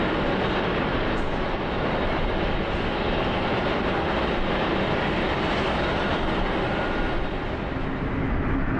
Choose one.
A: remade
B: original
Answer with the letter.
B